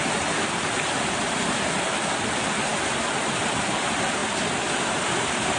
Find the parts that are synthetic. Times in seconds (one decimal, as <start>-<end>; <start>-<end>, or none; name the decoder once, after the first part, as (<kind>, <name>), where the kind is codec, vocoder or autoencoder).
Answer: 0.0-2.7 (vocoder, BigVGAN v2); 3.4-4.2; 4.9-5.6